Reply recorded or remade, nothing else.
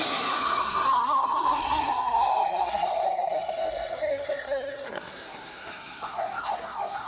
remade